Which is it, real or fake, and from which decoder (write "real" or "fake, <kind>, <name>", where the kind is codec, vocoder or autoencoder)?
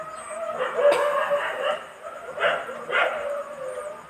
real